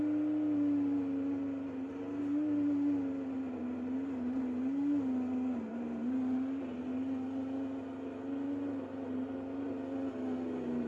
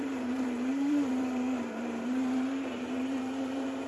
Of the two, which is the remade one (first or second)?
second